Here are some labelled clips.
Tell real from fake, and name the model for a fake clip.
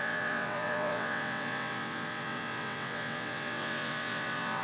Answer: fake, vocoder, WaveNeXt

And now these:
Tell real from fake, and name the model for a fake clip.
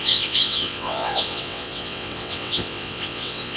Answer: fake, vocoder, WaveNeXt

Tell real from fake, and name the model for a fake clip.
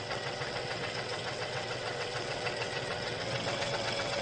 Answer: fake, vocoder, WaveNeXt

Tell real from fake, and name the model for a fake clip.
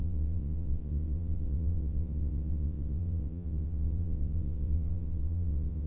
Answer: fake, vocoder, WaveNeXt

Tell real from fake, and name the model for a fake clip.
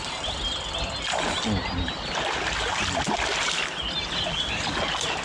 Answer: real